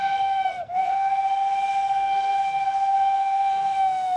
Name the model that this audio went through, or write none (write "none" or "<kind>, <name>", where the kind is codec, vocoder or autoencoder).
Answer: codec, SNAC